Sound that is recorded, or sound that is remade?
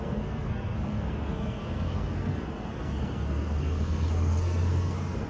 remade